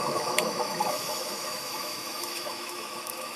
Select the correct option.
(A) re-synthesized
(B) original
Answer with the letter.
A